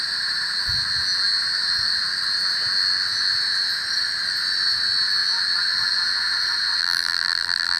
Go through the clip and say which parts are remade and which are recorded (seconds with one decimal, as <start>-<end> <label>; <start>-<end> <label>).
0.0-6.8 recorded; 6.8-7.8 remade